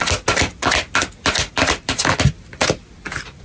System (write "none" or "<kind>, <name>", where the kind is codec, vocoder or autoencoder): none